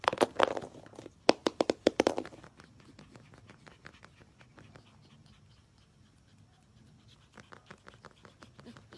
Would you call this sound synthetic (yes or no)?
no